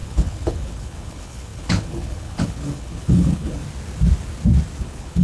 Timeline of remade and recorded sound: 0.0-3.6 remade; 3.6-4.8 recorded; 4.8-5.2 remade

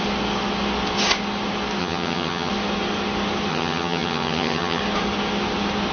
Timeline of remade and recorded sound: 0.0-1.8 recorded; 1.8-2.5 remade; 2.5-3.5 recorded; 3.5-4.8 remade; 4.8-5.9 recorded

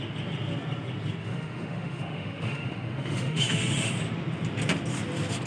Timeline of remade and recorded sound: 0.0-1.2 recorded; 1.2-3.9 remade; 3.9-5.5 recorded